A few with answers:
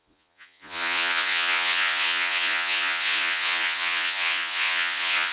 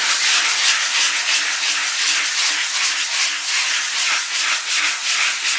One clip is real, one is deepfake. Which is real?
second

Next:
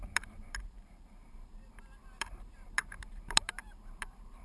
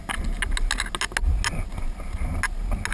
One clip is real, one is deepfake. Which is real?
second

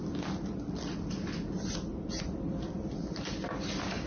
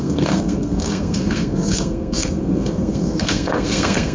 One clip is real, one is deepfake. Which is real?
first